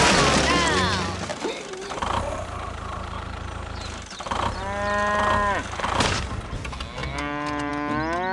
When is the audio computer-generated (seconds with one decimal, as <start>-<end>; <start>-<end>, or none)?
1.3-4.6